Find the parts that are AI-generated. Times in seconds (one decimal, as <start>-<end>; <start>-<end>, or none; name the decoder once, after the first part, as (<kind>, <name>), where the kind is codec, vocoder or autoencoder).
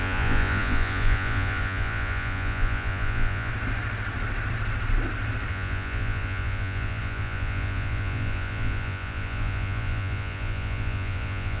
0.0-3.5 (vocoder, Vocos); 5.5-11.6